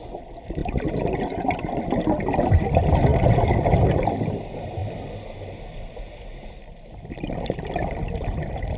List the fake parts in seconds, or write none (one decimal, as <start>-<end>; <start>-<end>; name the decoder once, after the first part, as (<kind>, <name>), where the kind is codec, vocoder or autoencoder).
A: none